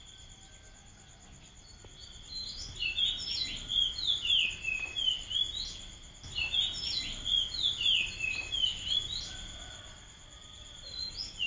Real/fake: real